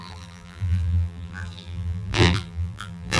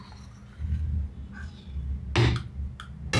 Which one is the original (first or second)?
second